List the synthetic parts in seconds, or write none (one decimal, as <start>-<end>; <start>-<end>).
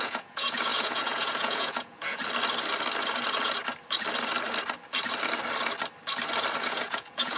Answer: 0.0-2.2; 6.6-7.4